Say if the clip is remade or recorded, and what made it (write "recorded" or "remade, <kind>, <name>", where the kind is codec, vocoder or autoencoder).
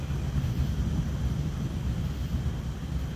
recorded